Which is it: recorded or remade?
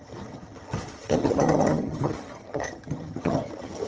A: remade